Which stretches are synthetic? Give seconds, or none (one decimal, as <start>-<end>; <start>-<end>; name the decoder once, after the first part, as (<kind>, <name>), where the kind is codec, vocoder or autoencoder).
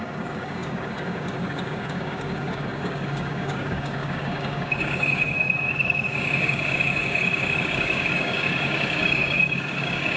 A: 0.0-10.2 (codec, DAC)